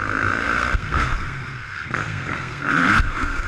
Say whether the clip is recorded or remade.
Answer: remade